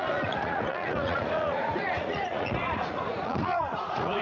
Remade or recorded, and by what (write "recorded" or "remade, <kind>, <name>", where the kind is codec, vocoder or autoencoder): remade, vocoder, Vocos